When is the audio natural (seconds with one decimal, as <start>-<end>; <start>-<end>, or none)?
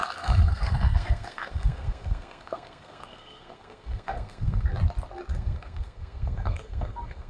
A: 4.7-5.3